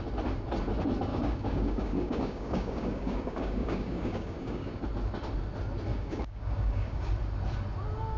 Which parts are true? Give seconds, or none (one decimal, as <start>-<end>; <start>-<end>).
0.0-1.1; 4.8-5.9; 7.1-8.2